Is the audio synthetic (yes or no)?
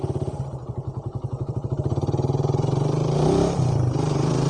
yes